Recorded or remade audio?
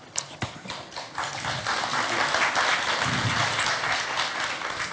recorded